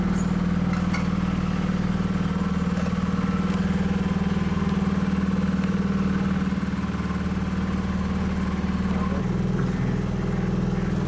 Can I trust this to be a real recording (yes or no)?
yes